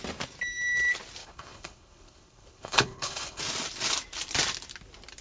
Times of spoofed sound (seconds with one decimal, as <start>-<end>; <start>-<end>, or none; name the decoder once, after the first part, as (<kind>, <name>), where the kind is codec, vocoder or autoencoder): 1.2-3.4 (codec, HILCodec)